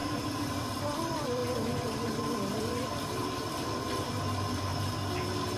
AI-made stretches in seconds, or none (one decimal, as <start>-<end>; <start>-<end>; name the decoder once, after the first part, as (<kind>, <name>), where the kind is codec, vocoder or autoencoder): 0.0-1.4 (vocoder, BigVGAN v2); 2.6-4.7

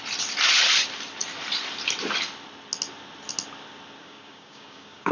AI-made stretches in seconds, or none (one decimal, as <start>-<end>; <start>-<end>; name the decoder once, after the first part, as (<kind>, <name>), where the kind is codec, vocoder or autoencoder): 4.0-5.1 (codec, DAC)

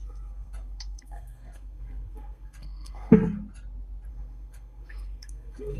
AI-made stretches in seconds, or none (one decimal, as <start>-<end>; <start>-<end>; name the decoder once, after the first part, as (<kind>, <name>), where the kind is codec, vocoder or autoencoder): 0.0-3.2 (codec, SNAC); 4.1-5.8

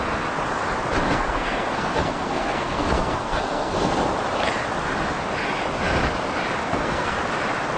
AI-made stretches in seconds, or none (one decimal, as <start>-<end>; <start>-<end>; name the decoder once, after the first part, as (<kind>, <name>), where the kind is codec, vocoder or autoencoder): 1.1-4.0 (codec, SNAC); 6.6-7.2